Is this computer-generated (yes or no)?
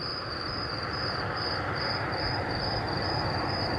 no